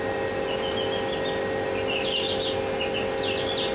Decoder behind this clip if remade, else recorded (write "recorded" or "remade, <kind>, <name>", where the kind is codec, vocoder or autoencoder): recorded